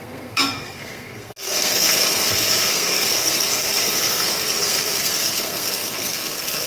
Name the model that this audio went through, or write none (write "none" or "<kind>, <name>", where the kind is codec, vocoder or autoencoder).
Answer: codec, SNAC